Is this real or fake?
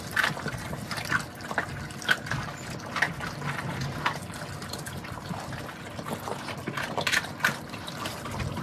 real